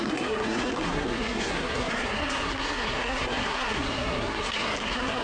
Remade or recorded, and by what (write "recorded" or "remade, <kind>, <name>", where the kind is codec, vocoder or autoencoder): remade, codec, SNAC